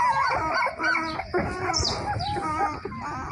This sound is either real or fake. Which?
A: real